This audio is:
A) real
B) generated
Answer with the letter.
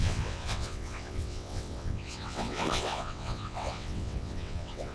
B